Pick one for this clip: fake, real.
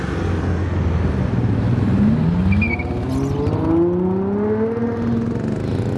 real